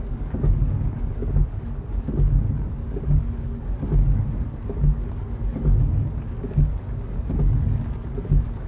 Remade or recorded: remade